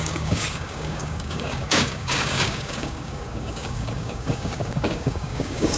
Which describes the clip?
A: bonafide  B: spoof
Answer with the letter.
B